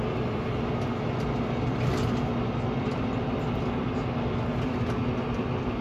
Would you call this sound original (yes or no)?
yes